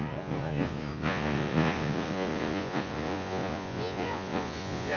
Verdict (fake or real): fake